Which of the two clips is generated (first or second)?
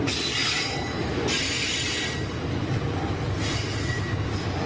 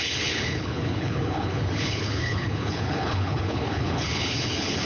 second